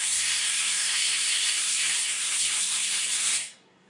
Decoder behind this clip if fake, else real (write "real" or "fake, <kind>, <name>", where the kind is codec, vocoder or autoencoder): fake, codec, SNAC